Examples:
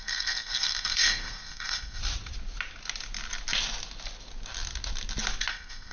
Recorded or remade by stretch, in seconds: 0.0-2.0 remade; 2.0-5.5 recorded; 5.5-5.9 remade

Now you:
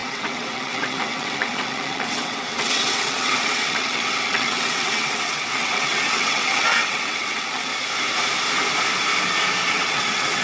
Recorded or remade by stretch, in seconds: 0.0-7.7 remade; 7.7-9.7 recorded; 9.7-10.4 remade

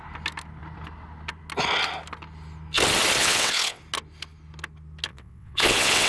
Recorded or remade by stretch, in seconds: 0.0-3.2 recorded; 3.2-3.8 remade; 3.8-5.1 recorded; 5.1-6.1 remade

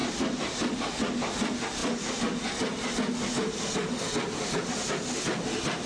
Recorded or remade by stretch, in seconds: 0.0-5.9 recorded